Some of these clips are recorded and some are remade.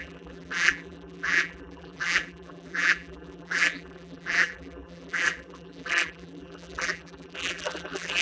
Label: remade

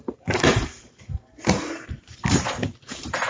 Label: remade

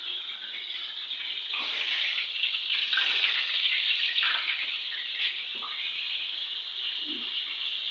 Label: recorded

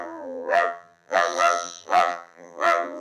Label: remade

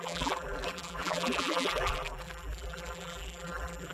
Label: remade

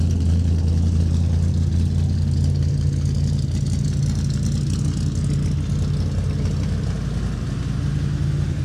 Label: recorded